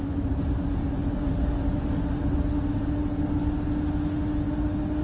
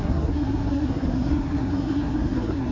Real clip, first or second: first